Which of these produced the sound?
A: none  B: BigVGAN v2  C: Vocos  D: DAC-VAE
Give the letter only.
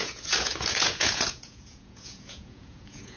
C